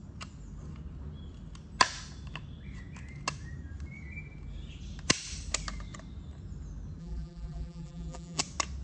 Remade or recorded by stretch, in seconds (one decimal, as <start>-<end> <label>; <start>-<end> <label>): 0.0-7.0 recorded; 7.0-8.4 remade; 8.4-8.8 recorded